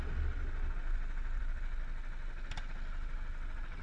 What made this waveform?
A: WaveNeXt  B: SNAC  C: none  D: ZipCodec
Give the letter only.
C